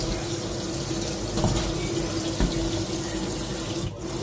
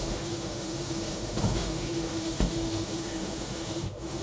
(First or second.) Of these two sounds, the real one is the first